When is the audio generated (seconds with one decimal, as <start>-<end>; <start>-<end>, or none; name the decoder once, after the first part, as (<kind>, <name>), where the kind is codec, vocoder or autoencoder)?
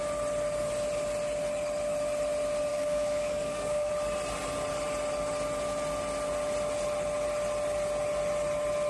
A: 2.7-3.9 (codec, DAC)